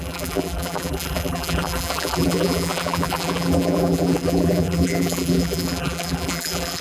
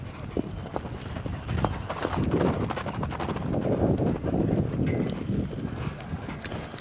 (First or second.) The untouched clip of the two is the second